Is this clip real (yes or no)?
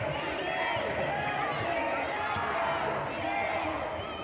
yes